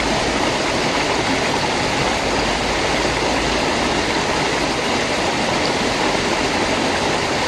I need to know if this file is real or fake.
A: real